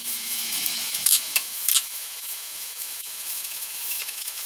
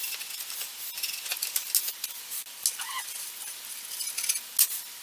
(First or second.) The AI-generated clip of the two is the first